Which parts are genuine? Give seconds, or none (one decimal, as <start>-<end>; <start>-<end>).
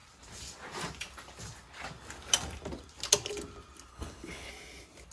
0.0-3.9; 4.5-5.1